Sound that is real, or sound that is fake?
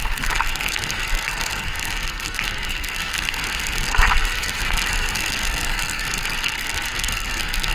fake